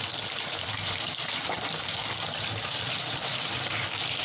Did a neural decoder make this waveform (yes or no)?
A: yes